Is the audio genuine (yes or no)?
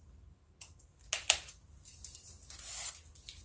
yes